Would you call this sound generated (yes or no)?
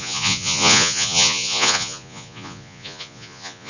yes